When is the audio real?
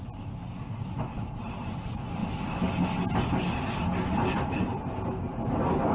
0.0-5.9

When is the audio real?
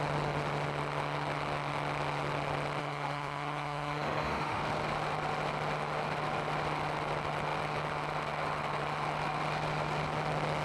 0.0-2.8; 4.6-10.6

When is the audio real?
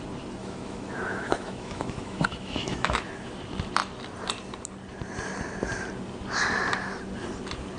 0.0-0.4; 3.3-7.8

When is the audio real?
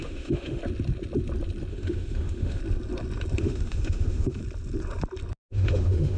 0.6-1.7; 2.6-3.4; 4.4-5.5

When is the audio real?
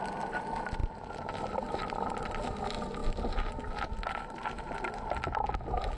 0.0-6.0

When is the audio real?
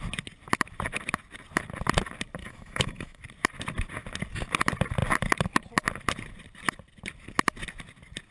0.0-2.4; 3.2-8.3